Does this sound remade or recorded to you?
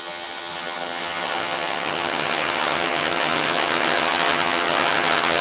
remade